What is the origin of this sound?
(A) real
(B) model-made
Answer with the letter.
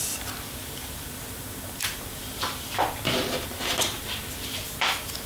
A